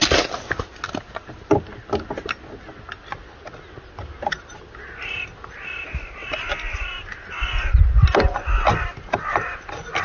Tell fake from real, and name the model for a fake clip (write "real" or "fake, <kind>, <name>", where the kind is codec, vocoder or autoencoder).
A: real